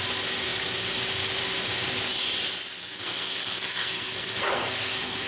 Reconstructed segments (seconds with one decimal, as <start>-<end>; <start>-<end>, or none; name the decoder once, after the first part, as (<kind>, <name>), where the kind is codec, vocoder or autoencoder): 2.8-5.3 (codec, SNAC)